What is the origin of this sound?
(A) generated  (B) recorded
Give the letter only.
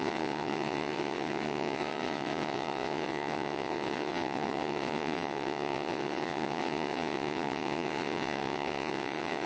A